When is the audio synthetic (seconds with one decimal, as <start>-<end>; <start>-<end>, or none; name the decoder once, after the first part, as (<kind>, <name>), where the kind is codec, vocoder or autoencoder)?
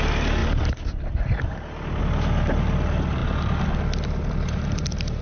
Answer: none